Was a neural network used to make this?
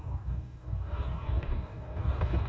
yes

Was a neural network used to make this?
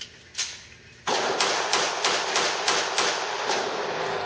no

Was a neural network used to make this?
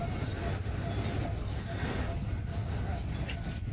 no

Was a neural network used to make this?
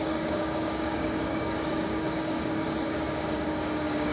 yes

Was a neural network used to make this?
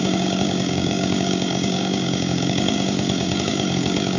yes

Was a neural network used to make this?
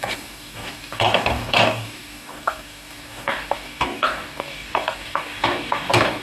yes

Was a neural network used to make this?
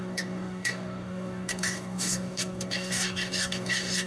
yes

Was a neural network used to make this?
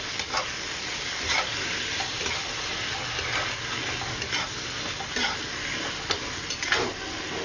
no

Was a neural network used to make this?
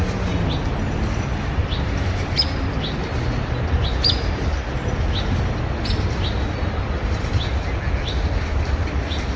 no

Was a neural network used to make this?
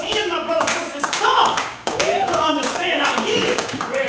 yes